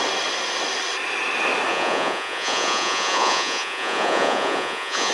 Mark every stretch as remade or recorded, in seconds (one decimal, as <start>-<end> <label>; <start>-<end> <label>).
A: 0.0-1.7 recorded; 1.7-5.1 remade

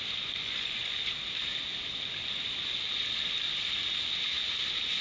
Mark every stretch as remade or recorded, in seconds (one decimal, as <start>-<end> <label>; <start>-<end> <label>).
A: 0.0-0.4 recorded; 0.4-1.1 remade; 1.1-5.0 recorded

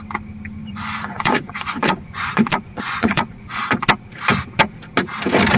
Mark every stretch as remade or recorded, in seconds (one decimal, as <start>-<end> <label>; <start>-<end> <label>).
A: 0.0-0.6 recorded; 0.6-3.6 remade; 3.6-5.6 recorded

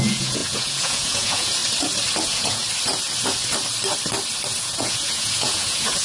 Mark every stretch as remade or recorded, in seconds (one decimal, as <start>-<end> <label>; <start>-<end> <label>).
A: 0.0-1.6 remade; 1.6-2.2 recorded; 2.2-2.6 remade; 2.6-4.6 recorded; 4.6-6.0 remade

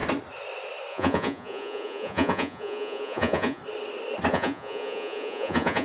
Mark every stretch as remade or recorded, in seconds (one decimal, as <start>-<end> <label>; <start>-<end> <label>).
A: 0.0-0.9 recorded; 0.9-3.6 remade; 3.6-4.3 recorded; 4.3-5.8 remade